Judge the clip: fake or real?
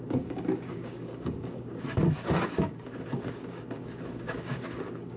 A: fake